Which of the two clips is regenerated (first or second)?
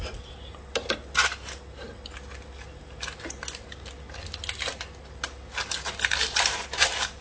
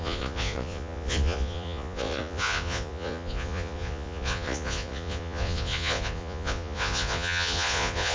second